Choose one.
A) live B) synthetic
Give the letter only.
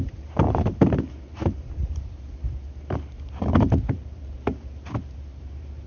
B